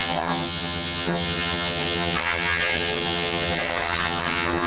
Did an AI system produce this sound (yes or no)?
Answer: yes